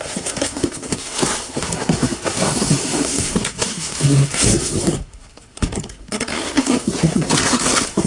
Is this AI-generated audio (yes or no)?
yes